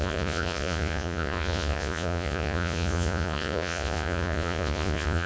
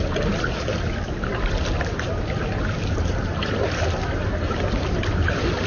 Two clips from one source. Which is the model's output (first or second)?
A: first